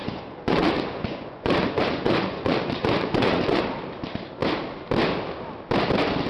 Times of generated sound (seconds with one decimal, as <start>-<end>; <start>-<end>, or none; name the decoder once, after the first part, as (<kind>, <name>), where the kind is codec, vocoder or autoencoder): 0.0-3.6 (vocoder, Vocos)